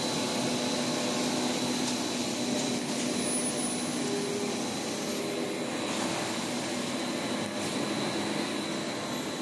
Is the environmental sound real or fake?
real